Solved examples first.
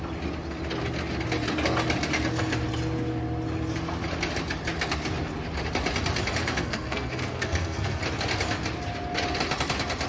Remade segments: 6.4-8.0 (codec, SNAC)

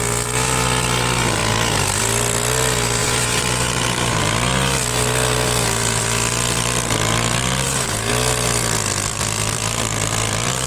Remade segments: 3.0-4.2 (vocoder, BigVGAN v2); 7.4-8.1; 9.1-10.7

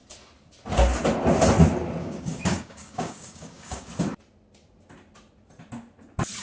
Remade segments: 2.0-3.9 (codec, DAC)

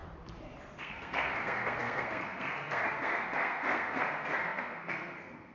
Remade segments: 0.8-5.5 (codec, SNAC)

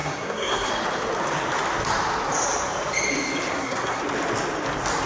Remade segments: 0.0-0.7 (codec, SNAC); 3.5-4.0

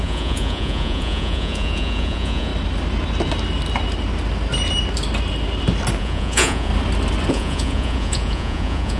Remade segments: 0.0-2.5 (vocoder, Vocos); 6.0-6.7; 7.3-9.0